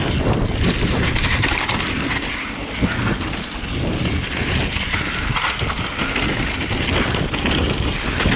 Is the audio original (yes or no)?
yes